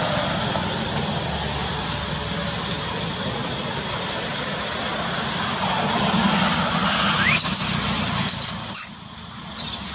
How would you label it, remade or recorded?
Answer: recorded